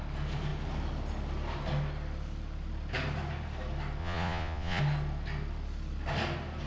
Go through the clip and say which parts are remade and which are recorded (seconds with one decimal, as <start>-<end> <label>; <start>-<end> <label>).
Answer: 0.0-4.0 recorded; 4.0-4.8 remade; 4.8-6.7 recorded